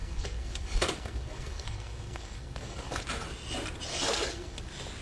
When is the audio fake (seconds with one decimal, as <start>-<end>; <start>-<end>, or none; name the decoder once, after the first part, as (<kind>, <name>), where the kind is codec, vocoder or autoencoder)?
0.0-3.0 (codec, SNAC); 3.9-4.6